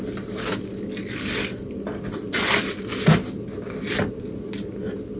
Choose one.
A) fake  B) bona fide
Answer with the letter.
B